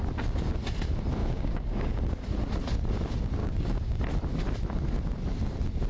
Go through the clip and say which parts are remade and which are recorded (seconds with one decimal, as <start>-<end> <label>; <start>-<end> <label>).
0.0-1.2 recorded; 1.2-2.0 remade; 2.0-3.4 recorded; 3.4-4.0 remade; 4.0-5.9 recorded